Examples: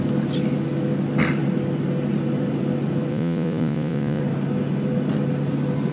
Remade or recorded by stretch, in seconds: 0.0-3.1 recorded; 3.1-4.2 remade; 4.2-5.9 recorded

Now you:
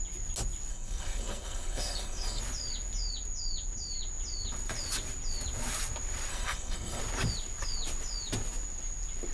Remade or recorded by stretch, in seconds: 0.0-0.7 recorded; 0.7-2.4 remade; 2.4-6.3 recorded; 6.3-7.0 remade; 7.0-9.3 recorded

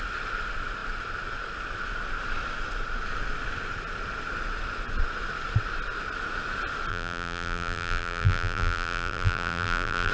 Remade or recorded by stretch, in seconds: 0.0-6.9 recorded; 6.9-10.1 remade